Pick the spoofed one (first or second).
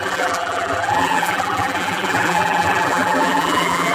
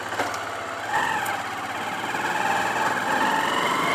first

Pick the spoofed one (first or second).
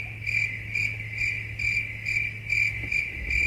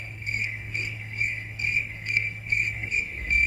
second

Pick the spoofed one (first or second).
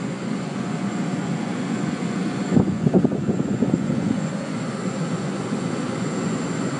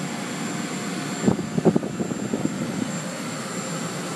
first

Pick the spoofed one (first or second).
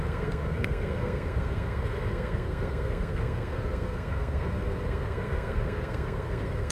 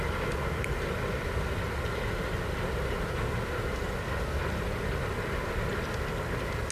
first